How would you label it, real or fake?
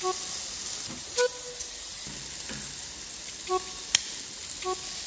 real